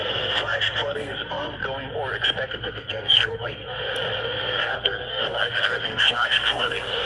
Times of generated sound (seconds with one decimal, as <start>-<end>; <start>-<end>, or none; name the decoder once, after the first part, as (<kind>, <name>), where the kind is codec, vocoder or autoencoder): 0.0-1.6 (codec, SNAC); 2.5-3.6; 4.2-7.1